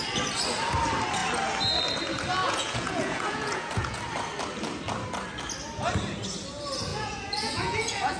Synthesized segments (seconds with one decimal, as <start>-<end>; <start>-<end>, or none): 2.4-4.0; 6.9-8.2